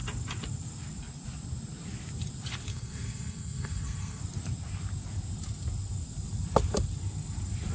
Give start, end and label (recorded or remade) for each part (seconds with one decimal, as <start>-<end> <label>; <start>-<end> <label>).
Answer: 0.0-2.7 recorded; 2.7-4.2 remade; 4.2-7.7 recorded